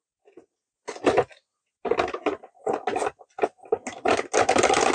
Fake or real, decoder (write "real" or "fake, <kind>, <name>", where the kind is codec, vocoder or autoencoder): real